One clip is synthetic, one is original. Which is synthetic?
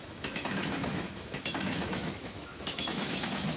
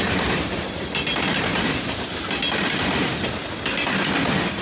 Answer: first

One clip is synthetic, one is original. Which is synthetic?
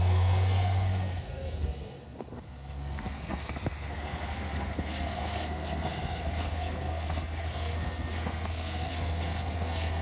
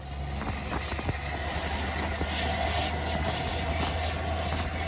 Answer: first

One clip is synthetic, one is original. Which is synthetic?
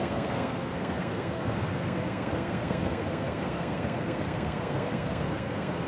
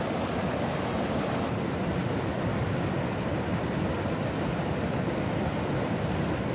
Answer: first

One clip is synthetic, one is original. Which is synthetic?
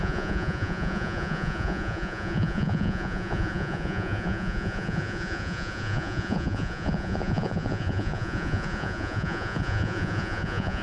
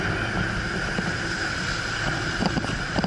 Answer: first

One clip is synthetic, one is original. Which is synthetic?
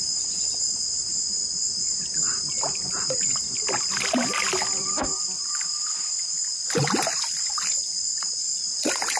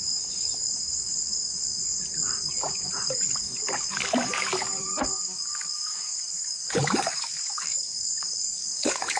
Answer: second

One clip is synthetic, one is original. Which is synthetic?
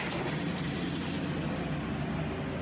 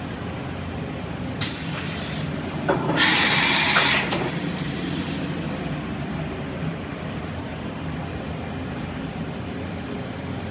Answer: second